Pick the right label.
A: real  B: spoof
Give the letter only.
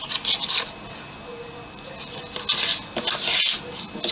A